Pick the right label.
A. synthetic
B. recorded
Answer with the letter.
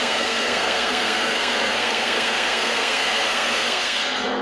A